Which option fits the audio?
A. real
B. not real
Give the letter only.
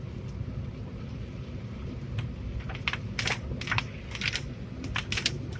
A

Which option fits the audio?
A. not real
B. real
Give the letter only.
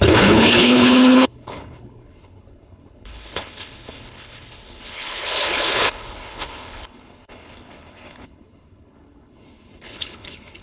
A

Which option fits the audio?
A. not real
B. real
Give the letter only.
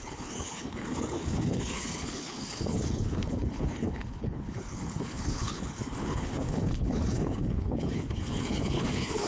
A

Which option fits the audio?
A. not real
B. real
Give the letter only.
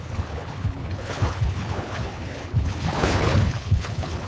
A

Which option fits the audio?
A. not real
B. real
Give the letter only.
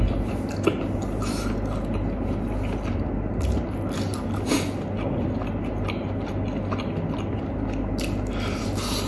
B